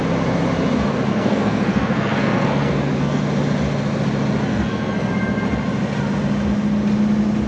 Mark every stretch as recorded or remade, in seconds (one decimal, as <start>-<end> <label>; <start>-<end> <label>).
0.0-1.1 recorded; 1.1-3.2 remade; 3.2-4.5 recorded; 4.5-5.1 remade; 5.1-7.5 recorded